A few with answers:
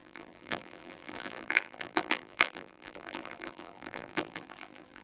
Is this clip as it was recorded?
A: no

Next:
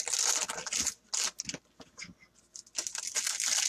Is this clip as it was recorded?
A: yes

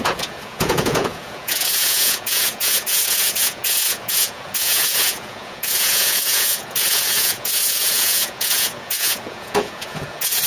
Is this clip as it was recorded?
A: no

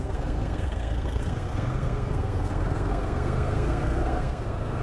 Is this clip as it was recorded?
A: no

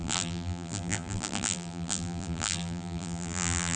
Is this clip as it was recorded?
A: no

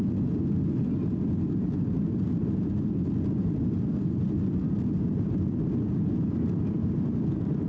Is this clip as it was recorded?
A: yes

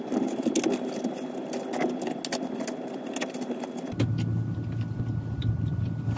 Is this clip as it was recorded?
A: yes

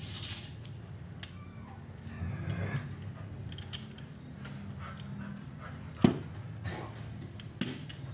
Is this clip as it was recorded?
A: yes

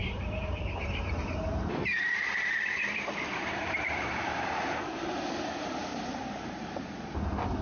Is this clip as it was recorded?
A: no